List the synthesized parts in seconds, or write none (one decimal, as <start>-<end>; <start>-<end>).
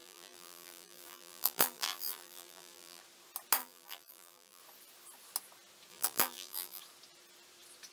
0.0-3.0; 3.6-4.6; 5.9-6.8